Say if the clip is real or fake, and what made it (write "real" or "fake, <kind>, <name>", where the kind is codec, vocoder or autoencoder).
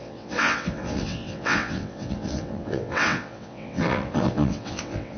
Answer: fake, vocoder, WaveNeXt